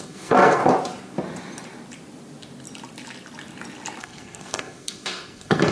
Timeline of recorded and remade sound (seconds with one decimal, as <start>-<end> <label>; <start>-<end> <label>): 0.0-0.6 remade; 0.6-4.0 recorded; 4.0-5.7 remade